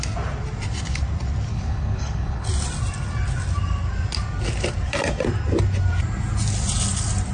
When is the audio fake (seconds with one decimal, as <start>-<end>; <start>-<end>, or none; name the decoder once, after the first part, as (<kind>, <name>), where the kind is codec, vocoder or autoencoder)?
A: 1.5-2.5 (codec, HILCodec)